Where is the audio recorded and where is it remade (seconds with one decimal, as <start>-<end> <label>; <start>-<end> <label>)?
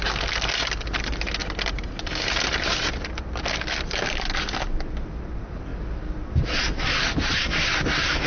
0.0-8.3 recorded